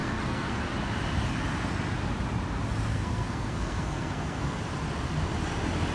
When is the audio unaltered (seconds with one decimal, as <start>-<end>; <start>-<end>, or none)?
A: 0.6-2.9; 4.6-5.9